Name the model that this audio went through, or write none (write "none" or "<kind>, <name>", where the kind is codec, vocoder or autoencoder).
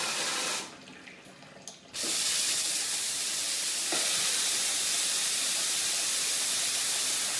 none